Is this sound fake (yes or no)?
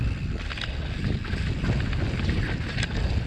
no